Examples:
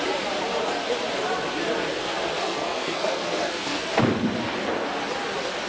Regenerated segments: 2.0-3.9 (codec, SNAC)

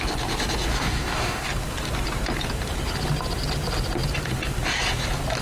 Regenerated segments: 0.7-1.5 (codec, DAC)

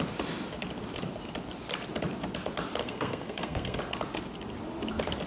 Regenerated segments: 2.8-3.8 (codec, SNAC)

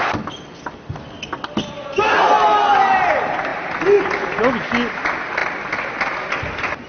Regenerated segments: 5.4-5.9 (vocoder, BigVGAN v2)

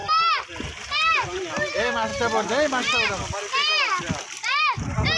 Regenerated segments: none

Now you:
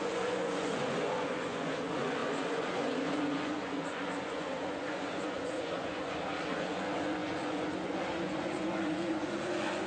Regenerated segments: 0.0-9.9 (vocoder, Vocos)